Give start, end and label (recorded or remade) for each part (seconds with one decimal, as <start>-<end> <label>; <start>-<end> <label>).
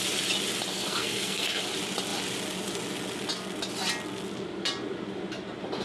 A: 0.0-0.7 recorded; 0.7-1.6 remade; 1.6-5.8 recorded